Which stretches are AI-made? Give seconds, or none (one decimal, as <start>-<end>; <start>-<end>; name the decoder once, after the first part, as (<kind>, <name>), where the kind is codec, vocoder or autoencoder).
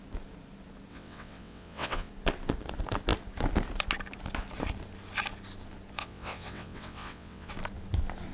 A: 0.9-2.1 (vocoder, WaveNeXt); 6.0-7.5